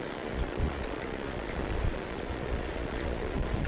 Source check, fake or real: fake